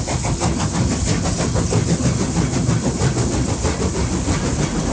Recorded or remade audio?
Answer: recorded